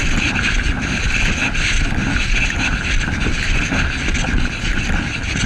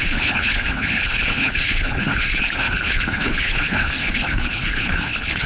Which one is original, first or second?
first